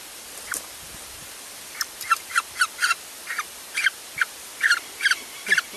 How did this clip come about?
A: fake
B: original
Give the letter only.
A